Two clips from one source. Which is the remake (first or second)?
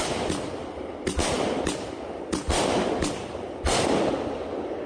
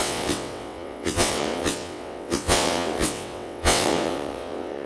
second